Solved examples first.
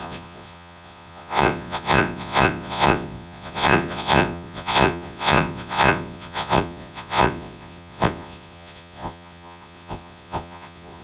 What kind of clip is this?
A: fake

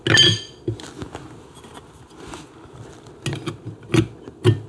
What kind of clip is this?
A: real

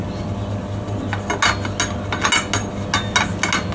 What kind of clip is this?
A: real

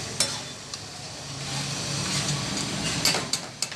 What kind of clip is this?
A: real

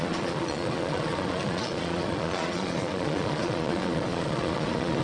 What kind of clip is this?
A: fake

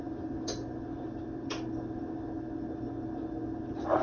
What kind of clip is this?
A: real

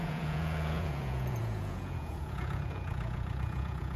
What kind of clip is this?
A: fake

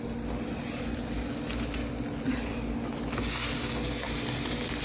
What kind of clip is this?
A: real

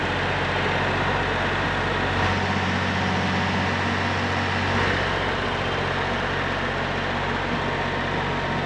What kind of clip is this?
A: real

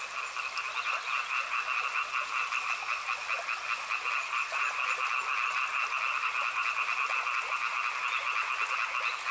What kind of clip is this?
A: real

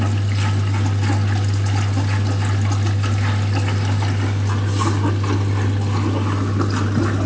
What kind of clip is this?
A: real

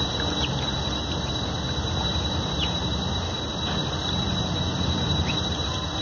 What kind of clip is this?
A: real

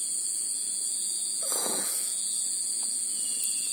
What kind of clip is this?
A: fake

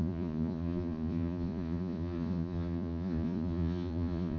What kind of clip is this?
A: fake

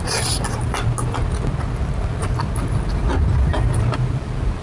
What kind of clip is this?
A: real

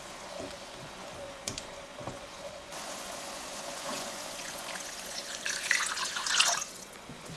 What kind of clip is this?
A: fake